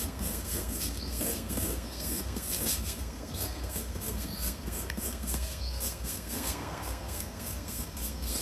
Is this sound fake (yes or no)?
yes